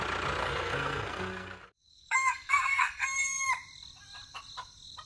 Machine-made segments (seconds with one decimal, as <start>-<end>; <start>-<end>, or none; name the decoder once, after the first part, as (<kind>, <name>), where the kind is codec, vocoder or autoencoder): 0.4-3.5 (codec, SNAC)